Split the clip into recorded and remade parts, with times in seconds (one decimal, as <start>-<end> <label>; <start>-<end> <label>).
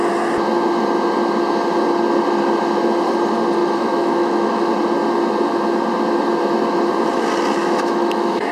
0.0-3.6 recorded; 3.6-4.7 remade; 4.7-7.6 recorded; 7.6-8.5 remade